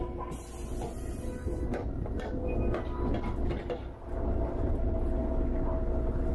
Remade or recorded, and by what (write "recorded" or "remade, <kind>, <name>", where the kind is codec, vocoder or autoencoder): recorded